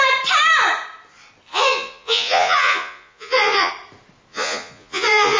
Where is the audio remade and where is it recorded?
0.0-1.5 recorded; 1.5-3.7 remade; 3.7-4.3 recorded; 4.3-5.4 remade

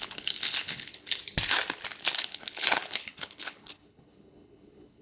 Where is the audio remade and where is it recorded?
0.0-1.2 remade; 1.2-2.2 recorded; 2.2-5.0 remade

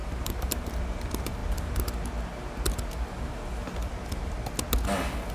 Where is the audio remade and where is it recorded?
0.0-0.7 remade; 0.7-5.3 recorded

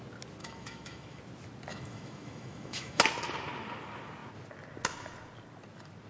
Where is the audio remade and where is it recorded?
0.0-0.4 recorded; 0.4-1.2 remade; 1.2-1.7 recorded; 1.7-3.0 remade; 3.0-6.1 recorded

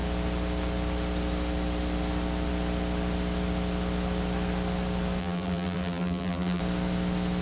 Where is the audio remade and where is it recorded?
0.0-5.2 recorded; 5.2-6.6 remade; 6.6-7.4 recorded

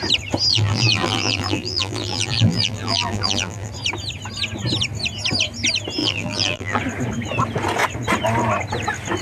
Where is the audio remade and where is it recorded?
0.0-0.5 recorded; 0.5-3.7 remade; 3.7-6.0 recorded; 6.0-6.8 remade; 6.8-9.2 recorded

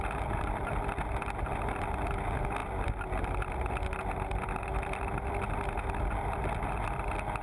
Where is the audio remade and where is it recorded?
0.0-7.4 recorded